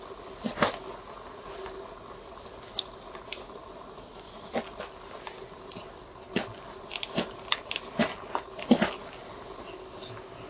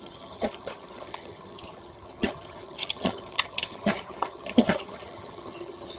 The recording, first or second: first